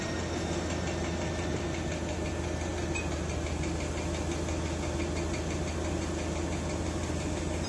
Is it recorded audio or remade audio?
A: recorded